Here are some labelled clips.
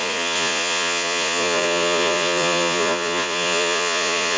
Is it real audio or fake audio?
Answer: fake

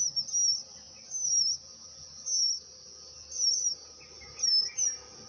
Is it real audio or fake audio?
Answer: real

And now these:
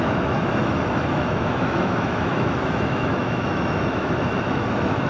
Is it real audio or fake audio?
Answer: fake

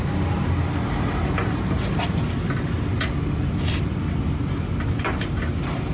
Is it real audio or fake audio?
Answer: real